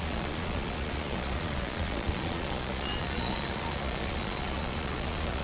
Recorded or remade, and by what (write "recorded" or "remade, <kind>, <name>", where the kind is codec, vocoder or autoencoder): remade, vocoder, Vocos